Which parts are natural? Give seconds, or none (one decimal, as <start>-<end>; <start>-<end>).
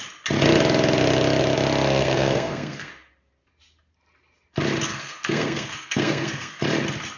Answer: 0.0-2.0; 2.9-4.9; 6.6-7.2